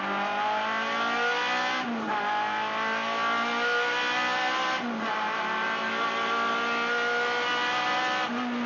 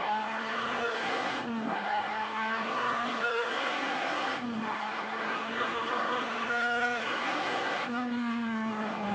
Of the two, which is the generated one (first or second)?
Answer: second